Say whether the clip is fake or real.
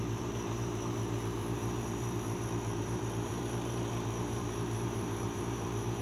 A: fake